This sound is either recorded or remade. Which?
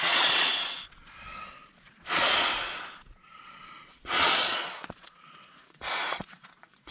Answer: remade